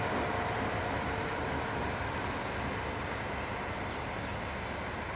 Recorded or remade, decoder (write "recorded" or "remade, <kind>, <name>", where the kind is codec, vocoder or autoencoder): recorded